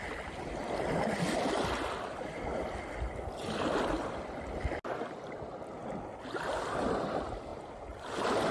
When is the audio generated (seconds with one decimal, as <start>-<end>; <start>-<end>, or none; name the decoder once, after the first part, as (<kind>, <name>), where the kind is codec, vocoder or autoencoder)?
none